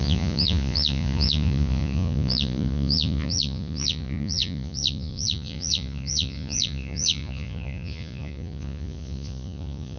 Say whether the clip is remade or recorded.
remade